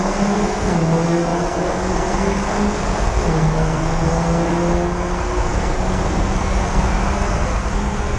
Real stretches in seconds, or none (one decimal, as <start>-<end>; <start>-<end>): none